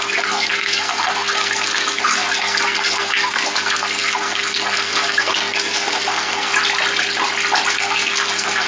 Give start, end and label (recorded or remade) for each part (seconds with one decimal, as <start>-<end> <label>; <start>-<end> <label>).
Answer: 0.0-6.5 remade; 6.5-7.7 recorded; 7.7-8.7 remade